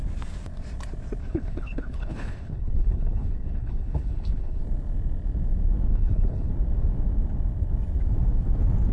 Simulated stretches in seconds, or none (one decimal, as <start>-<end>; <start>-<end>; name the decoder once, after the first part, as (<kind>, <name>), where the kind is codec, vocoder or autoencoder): 1.2-4.6 (codec, HILCodec); 5.9-6.5